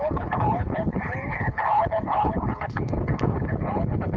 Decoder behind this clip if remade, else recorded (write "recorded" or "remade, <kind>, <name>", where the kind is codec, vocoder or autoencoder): remade, codec, HILCodec